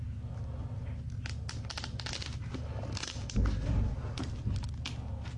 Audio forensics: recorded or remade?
recorded